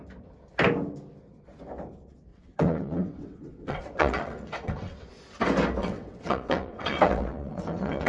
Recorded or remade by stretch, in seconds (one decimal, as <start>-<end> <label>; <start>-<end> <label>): 0.0-2.3 recorded; 2.3-5.1 remade; 5.1-5.8 recorded; 5.8-8.1 remade

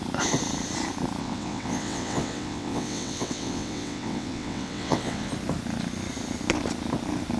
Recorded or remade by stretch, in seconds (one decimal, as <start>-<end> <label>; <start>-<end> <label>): 0.0-1.2 recorded; 1.2-5.3 remade; 5.3-7.4 recorded